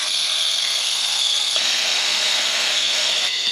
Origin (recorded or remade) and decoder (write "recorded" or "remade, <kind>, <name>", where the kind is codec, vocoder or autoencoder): remade, codec, SNAC